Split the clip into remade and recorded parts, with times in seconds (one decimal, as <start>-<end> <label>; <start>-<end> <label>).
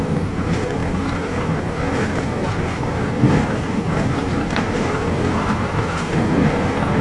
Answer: 0.0-7.0 remade